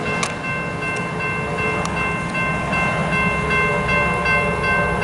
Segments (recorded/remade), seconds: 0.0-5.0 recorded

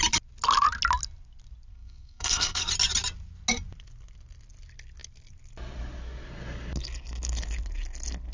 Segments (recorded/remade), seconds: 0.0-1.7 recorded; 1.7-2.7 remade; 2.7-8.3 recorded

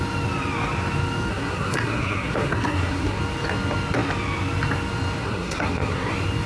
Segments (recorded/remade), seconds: 0.0-1.3 recorded; 1.3-3.2 remade; 3.2-5.2 recorded; 5.2-6.1 remade; 6.1-6.5 recorded

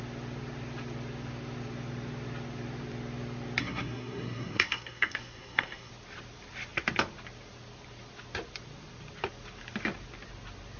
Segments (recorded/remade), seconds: 0.0-3.6 recorded; 3.6-5.9 remade; 5.9-10.8 recorded

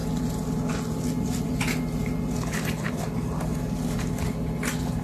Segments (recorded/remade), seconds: 0.0-5.0 recorded

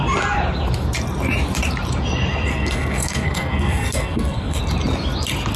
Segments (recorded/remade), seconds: 0.0-2.5 recorded; 2.5-4.6 remade; 4.6-5.6 recorded

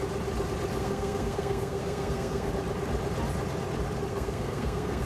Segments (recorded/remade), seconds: 0.0-0.8 recorded; 0.8-2.5 remade; 2.5-4.1 recorded; 4.1-5.1 remade

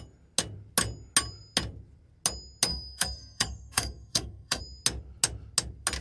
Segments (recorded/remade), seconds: 0.0-2.7 recorded; 2.7-4.6 remade; 4.6-6.0 recorded